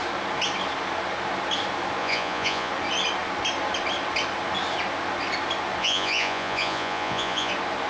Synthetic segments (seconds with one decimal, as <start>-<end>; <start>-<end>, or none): 2.0-2.7; 5.8-7.5